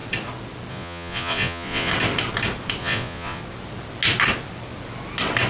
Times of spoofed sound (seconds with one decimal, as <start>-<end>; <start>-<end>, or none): 0.7-1.9; 2.8-3.4